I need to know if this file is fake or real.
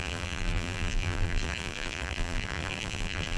fake